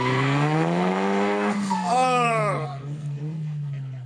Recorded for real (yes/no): no